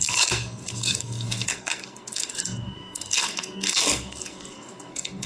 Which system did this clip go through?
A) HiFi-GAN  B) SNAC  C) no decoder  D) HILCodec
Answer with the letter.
B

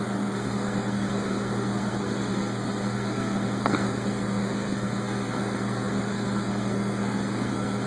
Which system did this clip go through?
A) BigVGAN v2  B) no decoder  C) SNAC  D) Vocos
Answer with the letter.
C